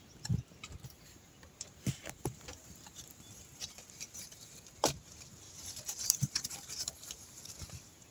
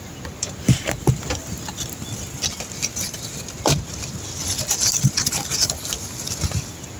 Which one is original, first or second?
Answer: second